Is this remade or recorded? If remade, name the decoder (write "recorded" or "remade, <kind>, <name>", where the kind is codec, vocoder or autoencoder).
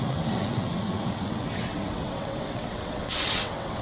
remade, vocoder, WaveNeXt